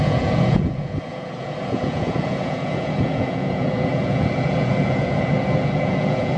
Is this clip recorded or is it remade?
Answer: remade